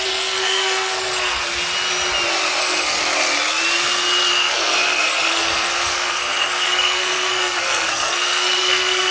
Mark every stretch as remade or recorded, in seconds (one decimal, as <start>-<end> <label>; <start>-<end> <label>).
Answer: 0.0-1.4 remade; 1.4-2.6 recorded; 2.6-3.0 remade; 3.0-4.3 recorded; 4.3-9.1 remade